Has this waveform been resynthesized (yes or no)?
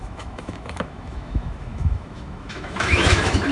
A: yes